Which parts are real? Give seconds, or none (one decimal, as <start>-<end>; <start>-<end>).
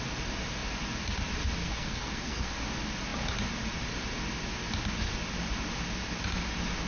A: 0.0-1.6; 2.5-6.9